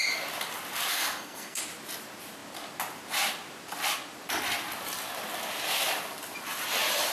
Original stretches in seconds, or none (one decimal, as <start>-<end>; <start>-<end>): 0.0-0.9; 1.6-7.1